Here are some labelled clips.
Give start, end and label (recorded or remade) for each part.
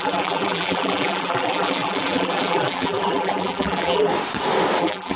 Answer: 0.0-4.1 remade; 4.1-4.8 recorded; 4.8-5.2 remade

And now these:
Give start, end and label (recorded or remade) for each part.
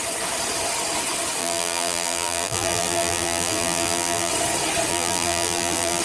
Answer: 0.0-1.4 recorded; 1.4-4.3 remade; 4.3-4.9 recorded; 4.9-6.0 remade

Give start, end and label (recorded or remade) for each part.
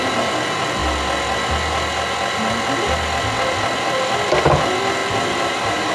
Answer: 0.0-5.0 recorded; 5.0-5.9 remade